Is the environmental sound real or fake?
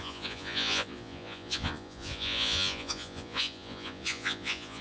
fake